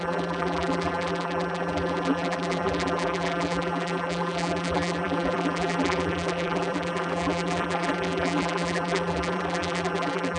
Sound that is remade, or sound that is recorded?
remade